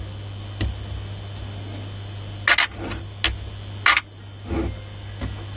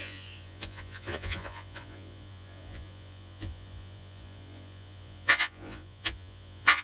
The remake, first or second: second